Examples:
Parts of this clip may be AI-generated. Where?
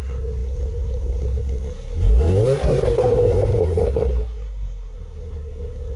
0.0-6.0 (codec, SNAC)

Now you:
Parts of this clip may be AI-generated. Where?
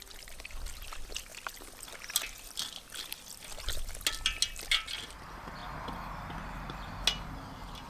none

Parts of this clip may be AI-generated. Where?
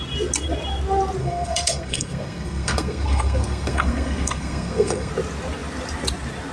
1.2-5.1 (codec, SNAC)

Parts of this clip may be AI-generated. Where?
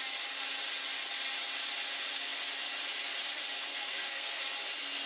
3.7-4.4 (codec, SNAC)